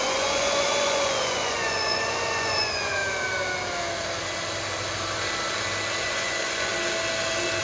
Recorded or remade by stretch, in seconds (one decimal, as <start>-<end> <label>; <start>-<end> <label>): 0.0-3.0 remade; 3.0-6.0 recorded; 6.0-6.7 remade; 6.7-7.6 recorded